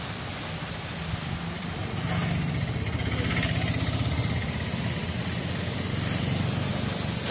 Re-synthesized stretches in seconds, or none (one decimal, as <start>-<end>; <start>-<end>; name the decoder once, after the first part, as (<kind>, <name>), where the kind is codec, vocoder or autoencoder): 0.0-1.8 (vocoder, BigVGAN v2); 6.2-6.7